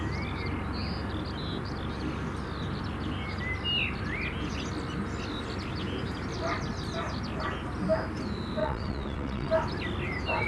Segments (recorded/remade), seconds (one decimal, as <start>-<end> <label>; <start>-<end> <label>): 0.0-8.6 recorded; 8.6-9.5 remade; 9.5-10.5 recorded